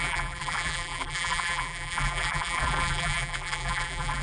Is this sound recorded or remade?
remade